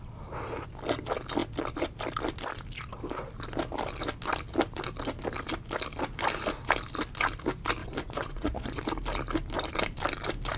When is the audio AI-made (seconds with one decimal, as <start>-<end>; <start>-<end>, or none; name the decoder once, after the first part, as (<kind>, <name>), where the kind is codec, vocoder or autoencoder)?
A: 7.8-8.8 (vocoder, Vocos)